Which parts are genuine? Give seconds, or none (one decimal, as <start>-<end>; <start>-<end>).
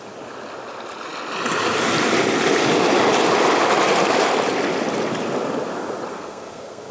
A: 0.0-6.1